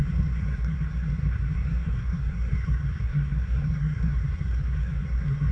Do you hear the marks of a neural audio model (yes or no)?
yes